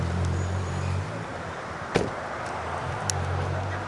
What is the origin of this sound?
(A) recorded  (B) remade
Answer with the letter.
A